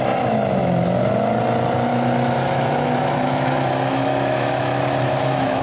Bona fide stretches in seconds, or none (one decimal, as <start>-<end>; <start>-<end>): 0.0-0.6; 1.1-1.9